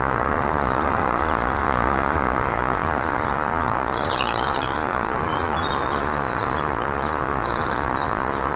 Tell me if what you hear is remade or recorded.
remade